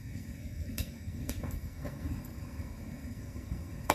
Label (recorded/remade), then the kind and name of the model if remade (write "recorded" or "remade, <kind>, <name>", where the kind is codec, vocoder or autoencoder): remade, codec, SNAC